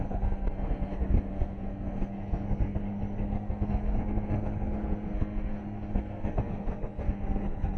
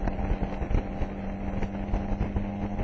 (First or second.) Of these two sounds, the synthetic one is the first